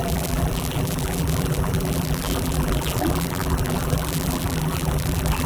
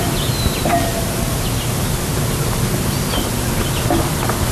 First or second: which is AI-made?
first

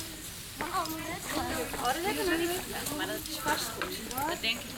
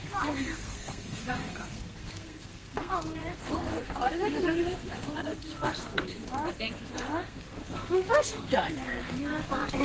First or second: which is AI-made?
second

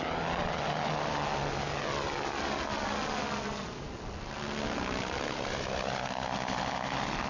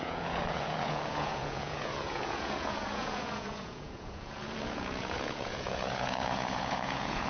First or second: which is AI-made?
second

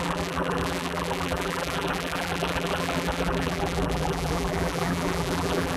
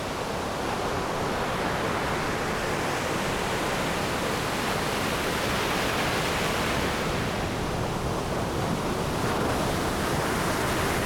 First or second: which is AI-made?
first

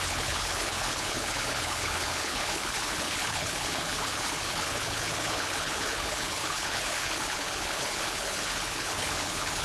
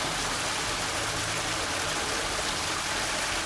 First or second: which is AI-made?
first